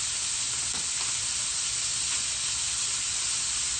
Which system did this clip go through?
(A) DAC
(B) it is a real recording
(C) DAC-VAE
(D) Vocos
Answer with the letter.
B